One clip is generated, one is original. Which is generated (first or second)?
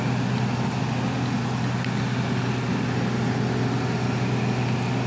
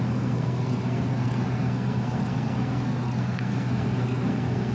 second